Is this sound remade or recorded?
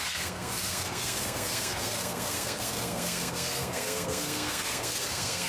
remade